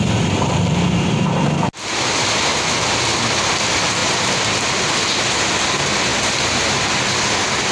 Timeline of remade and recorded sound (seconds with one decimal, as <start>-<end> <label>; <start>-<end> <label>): 0.0-4.0 recorded; 4.0-4.7 remade; 4.7-7.7 recorded